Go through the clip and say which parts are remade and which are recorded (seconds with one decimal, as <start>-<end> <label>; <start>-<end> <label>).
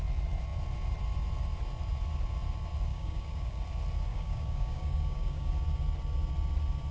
0.0-2.9 recorded; 2.9-3.6 remade; 3.6-4.1 recorded; 4.1-5.5 remade; 5.5-6.9 recorded